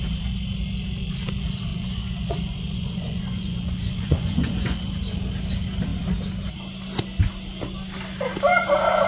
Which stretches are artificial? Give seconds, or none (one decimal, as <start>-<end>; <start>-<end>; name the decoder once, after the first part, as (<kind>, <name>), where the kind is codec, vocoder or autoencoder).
1.7-4.8 (vocoder, Vocos)